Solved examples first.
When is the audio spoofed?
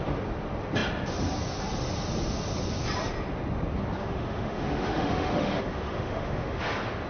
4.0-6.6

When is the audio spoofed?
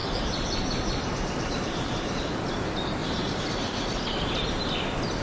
0.0-2.4; 3.0-4.0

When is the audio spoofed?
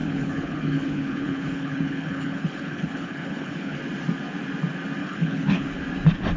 0.0-3.8; 5.0-5.8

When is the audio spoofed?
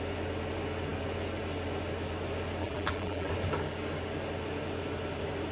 2.6-3.3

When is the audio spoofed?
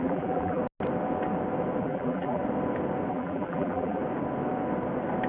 0.0-0.6; 1.8-2.4; 3.1-4.0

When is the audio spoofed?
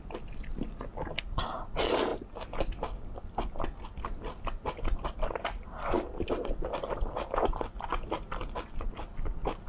none